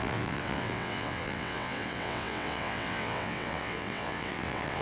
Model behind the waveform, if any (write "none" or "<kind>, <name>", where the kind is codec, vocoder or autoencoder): vocoder, WaveNeXt